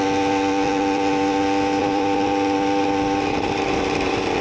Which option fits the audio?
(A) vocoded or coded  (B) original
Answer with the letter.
B